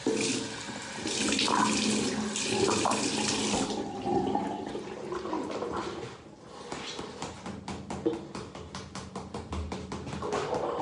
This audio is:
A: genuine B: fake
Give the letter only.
A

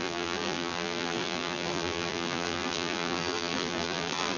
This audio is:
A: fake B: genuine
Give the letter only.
A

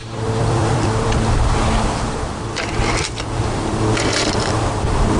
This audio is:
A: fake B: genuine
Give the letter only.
A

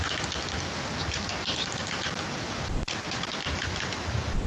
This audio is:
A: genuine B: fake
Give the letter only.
B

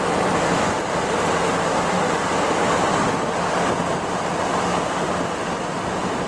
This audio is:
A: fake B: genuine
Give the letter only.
B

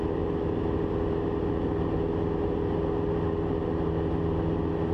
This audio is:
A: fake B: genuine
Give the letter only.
B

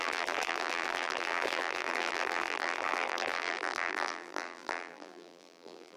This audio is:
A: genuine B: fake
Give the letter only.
B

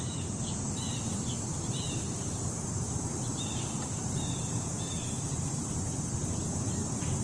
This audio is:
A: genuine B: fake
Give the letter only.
B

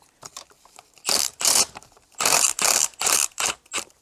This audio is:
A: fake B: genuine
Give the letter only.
A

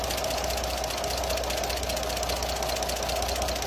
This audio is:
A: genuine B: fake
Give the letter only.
A